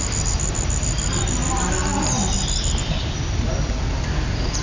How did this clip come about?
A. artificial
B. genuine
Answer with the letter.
B